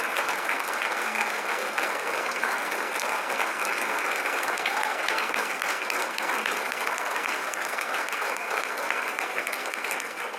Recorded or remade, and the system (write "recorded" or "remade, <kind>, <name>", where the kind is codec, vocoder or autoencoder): remade, codec, SNAC